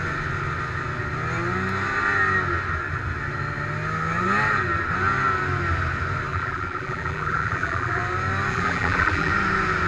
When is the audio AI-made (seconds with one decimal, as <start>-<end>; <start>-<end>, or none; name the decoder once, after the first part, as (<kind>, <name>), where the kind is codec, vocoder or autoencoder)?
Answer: 6.3-8.0 (vocoder, BigVGAN v2); 8.5-9.3